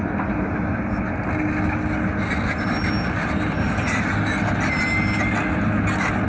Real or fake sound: real